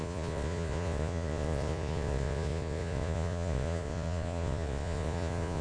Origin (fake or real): fake